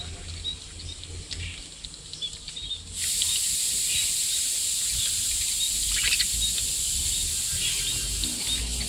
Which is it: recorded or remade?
recorded